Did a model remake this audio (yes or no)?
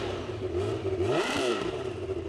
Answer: yes